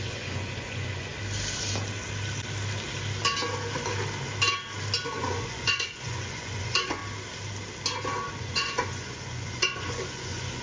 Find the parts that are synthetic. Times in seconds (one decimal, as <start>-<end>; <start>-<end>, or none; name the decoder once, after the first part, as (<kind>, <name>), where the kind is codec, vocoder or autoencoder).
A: 0.0-1.1 (vocoder, Vocos); 5.2-7.0; 8.4-10.6